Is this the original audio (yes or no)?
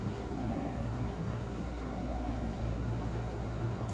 no